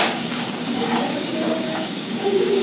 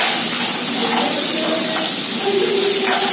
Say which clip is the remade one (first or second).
first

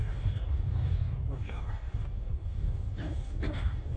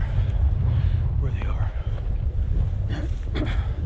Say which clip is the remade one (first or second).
first